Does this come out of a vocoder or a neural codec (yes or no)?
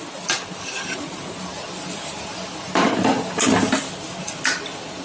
no